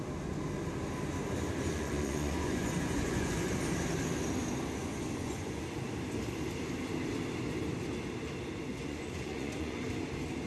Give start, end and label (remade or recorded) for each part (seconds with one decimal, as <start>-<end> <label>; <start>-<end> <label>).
0.0-1.7 recorded; 1.7-3.5 remade; 3.5-4.8 recorded; 4.8-5.6 remade; 5.6-8.7 recorded; 8.7-9.8 remade; 9.8-10.5 recorded